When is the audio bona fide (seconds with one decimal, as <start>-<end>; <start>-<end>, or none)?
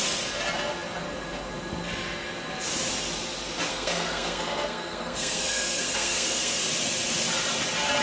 0.0-3.7; 6.6-8.0